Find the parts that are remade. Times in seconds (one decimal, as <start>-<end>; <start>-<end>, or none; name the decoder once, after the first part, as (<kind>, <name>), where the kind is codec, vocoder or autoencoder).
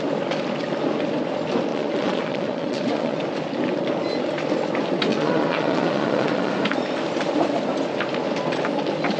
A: 1.7-3.2 (vocoder, Vocos); 5.1-6.5